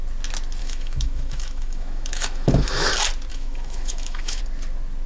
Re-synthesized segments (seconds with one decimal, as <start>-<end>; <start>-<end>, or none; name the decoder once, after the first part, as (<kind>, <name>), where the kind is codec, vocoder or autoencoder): 0.6-2.9 (autoencoder, DAC-VAE); 3.3-4.4